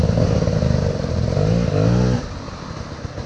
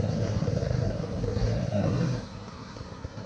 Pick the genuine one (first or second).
first